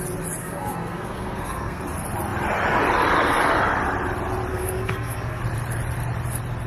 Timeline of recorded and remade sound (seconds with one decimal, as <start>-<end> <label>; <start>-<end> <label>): 0.0-0.4 recorded; 0.4-1.8 remade; 1.8-4.5 recorded; 4.5-5.4 remade; 5.4-6.7 recorded